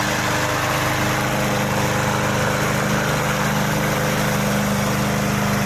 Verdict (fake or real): real